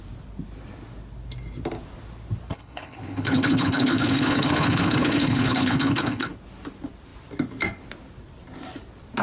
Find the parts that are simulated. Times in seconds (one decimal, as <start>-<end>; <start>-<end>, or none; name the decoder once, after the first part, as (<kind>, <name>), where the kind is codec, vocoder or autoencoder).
2.5-6.3 (codec, HILCodec)